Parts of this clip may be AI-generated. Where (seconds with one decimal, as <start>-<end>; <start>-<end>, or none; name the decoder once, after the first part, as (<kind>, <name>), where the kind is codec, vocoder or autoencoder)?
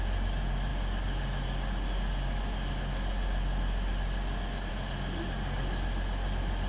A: none